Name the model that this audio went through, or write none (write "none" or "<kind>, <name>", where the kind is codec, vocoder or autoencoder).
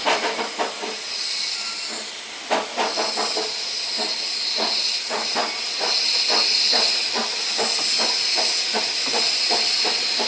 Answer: none